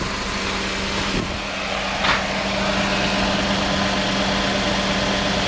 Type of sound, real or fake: real